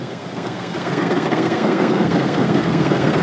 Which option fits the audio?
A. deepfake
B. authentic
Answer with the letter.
A